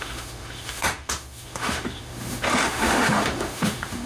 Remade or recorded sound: remade